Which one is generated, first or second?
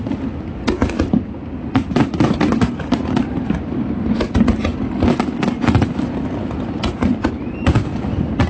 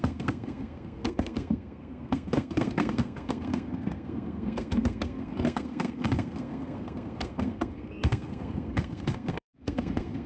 second